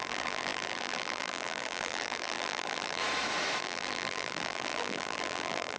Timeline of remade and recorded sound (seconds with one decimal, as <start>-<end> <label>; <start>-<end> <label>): 0.0-3.0 remade; 3.0-3.6 recorded; 3.6-5.8 remade